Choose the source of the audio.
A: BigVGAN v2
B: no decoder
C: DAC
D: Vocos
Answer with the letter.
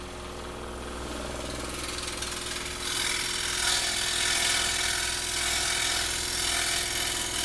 B